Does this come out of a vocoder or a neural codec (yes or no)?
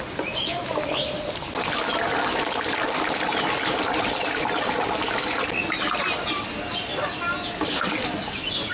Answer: no